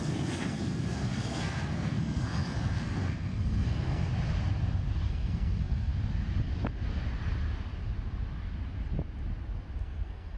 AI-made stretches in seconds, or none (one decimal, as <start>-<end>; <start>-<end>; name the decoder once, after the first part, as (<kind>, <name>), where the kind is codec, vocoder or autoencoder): 0.0-4.1 (codec, SNAC); 5.1-5.9; 9.8-10.4